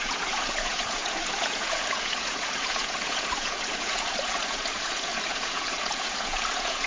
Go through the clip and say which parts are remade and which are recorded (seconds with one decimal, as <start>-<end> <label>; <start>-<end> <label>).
0.0-6.9 remade